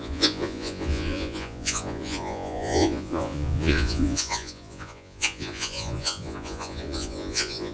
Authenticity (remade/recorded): remade